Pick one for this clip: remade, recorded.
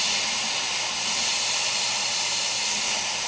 recorded